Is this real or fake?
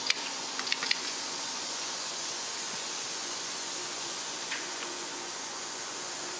fake